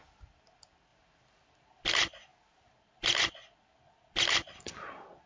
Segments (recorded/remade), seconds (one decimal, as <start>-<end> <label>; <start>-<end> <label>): 0.0-5.3 recorded